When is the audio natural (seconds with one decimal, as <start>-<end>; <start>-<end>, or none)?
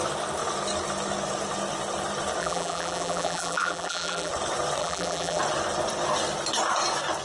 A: 0.0-2.4; 4.3-4.8; 5.4-7.2